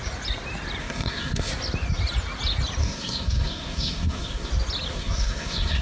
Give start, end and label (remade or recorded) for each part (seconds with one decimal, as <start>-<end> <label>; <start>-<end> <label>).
0.0-0.8 recorded; 0.8-1.5 remade; 1.5-2.8 recorded; 2.8-4.5 remade; 4.5-4.9 recorded; 4.9-5.8 remade